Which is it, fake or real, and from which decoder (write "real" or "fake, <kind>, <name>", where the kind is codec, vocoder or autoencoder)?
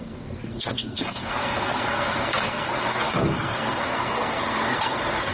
fake, codec, SNAC